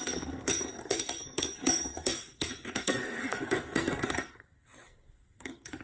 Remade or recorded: remade